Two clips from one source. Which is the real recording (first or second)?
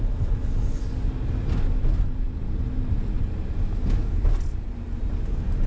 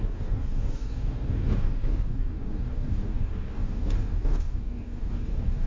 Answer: first